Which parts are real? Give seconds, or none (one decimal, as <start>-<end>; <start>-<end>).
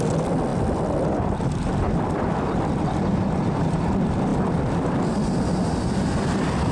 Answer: 0.0-6.7